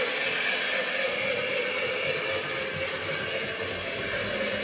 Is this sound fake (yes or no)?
no